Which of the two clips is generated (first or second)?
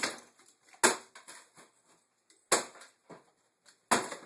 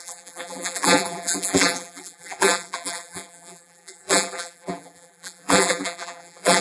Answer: second